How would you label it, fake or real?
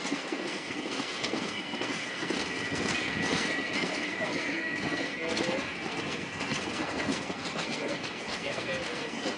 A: fake